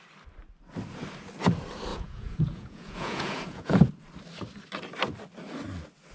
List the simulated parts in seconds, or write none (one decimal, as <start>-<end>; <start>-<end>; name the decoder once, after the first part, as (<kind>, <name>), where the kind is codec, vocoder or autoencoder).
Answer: 1.9-3.9 (vocoder, Vocos)